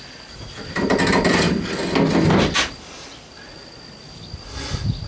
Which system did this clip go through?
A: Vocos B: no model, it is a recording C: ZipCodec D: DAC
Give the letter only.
B